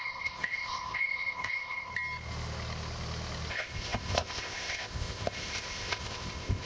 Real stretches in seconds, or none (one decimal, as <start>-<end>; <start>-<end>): 1.9-3.5